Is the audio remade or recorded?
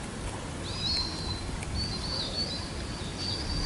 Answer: recorded